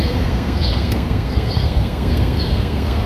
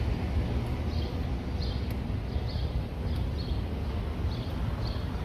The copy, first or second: first